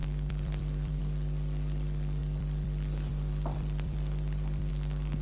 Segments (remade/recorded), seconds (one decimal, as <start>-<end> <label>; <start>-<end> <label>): 0.0-1.0 remade; 1.0-2.2 recorded; 2.2-4.7 remade; 4.7-5.2 recorded

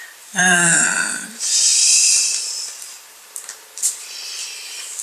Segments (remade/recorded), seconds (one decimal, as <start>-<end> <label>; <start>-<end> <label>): 0.0-1.7 remade; 1.7-2.4 recorded; 2.4-5.0 remade

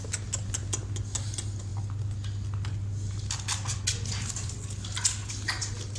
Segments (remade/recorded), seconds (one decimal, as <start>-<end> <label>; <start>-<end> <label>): 0.0-6.0 recorded

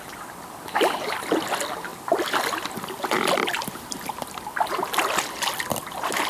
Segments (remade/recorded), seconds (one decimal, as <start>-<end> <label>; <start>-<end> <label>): 0.0-6.3 recorded

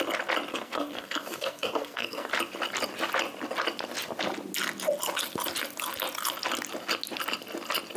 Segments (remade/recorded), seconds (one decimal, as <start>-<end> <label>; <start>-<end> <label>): 0.0-0.5 recorded; 0.5-2.3 remade; 2.3-8.0 recorded

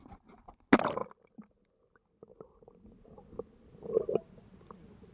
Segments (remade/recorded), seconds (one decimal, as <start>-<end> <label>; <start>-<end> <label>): 0.0-5.1 recorded